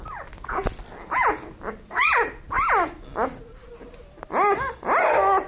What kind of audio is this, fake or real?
real